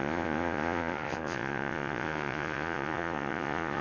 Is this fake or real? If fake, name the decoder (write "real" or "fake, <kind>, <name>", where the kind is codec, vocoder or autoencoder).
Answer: fake, vocoder, Vocos